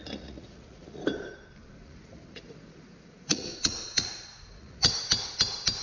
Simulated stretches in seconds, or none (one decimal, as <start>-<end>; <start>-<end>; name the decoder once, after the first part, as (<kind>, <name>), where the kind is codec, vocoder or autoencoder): 0.0-1.0 (vocoder, Vocos); 1.8-4.9